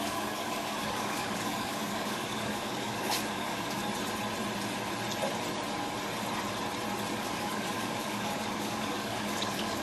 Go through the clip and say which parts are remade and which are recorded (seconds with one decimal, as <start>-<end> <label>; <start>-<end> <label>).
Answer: 0.0-3.8 remade; 3.8-7.2 recorded; 7.2-9.8 remade